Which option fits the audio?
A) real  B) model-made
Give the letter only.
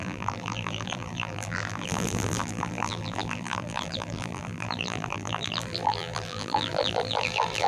B